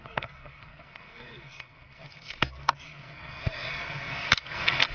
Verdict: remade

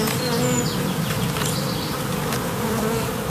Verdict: recorded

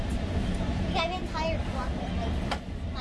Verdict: recorded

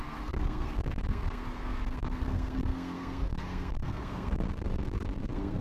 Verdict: remade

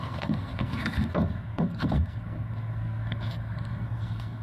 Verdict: remade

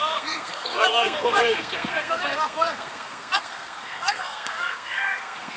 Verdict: remade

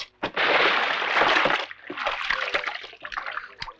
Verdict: recorded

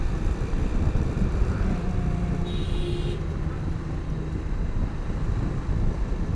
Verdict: recorded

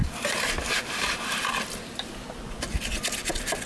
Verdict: recorded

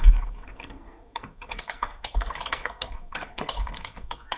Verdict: remade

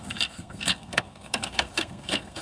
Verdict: remade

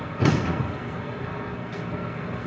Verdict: remade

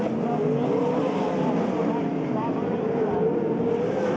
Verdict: recorded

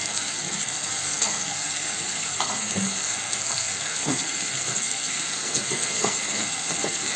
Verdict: remade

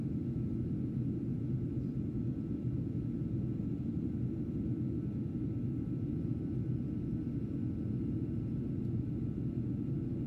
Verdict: recorded